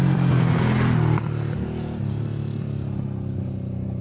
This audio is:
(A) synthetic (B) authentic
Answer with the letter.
B